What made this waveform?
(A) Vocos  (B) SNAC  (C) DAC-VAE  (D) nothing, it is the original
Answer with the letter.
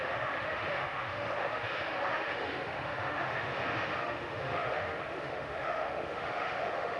C